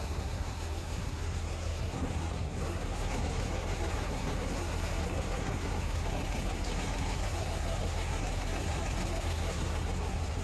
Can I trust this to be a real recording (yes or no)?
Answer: no